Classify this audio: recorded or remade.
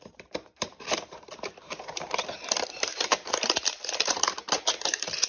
remade